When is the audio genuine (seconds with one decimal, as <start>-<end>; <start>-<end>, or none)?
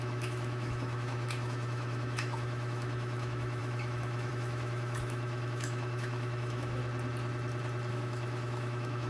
6.8-7.9